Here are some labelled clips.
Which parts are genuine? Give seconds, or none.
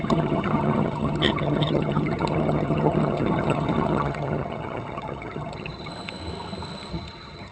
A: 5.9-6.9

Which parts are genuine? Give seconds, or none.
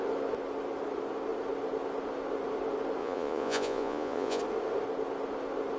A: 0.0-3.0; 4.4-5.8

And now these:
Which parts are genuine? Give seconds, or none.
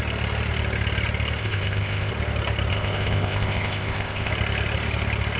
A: 0.0-1.4; 2.1-2.7; 4.3-5.4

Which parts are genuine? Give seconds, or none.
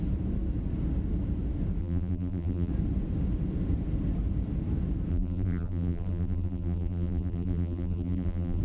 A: 0.0-1.8; 2.7-5.1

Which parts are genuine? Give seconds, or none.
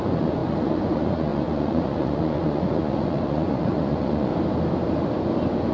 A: 4.3-5.7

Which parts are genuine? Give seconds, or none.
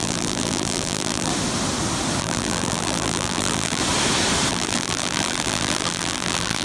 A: 1.3-2.2; 3.8-4.5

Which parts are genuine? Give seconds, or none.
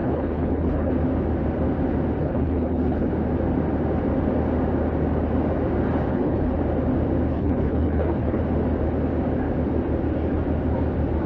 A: 0.9-2.2; 3.1-6.1; 6.6-7.3; 8.4-11.3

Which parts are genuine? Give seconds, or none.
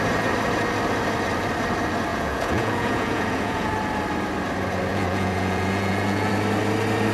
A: 0.0-2.1; 3.7-4.9; 6.3-7.1